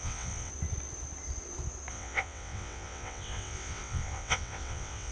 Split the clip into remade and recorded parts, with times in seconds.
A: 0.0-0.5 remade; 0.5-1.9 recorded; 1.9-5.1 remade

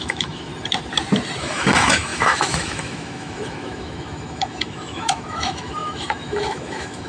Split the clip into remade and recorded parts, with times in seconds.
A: 0.0-0.5 remade; 0.5-1.4 recorded; 1.4-7.1 remade

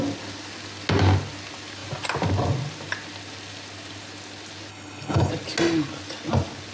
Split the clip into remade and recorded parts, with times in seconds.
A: 0.0-4.7 recorded; 4.7-5.3 remade; 5.3-6.7 recorded

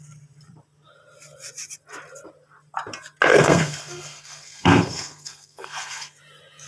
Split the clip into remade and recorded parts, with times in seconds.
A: 0.0-3.3 recorded; 3.3-6.2 remade; 6.2-6.7 recorded

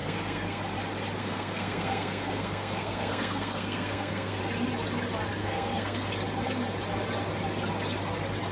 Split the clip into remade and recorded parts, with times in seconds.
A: 0.0-0.6 remade; 0.6-1.2 recorded; 1.2-4.4 remade; 4.4-5.4 recorded; 5.4-6.1 remade; 6.1-8.5 recorded

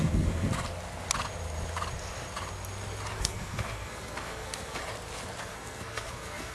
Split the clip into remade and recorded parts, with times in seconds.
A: 0.0-0.5 remade; 0.5-3.2 recorded; 3.2-4.8 remade; 4.8-5.4 recorded; 5.4-6.5 remade